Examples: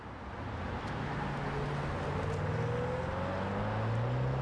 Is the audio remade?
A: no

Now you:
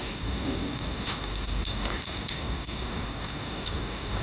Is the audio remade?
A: yes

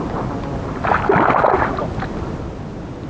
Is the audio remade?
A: no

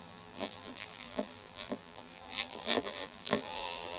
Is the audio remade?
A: yes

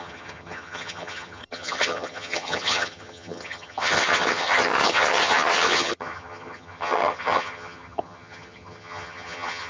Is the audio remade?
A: yes